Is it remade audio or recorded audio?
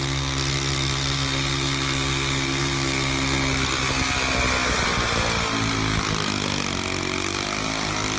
recorded